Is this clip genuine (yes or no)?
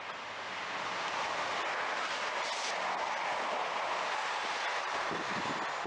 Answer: yes